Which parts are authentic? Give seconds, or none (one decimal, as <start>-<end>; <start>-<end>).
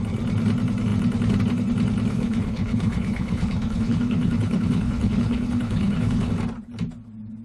0.0-2.1; 6.3-7.4